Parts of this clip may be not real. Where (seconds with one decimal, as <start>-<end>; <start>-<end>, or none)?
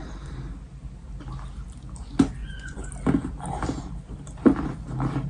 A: 2.4-2.9